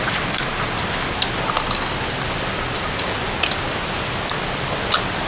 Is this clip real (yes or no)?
yes